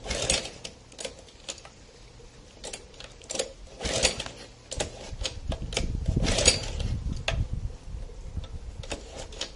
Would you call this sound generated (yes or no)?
no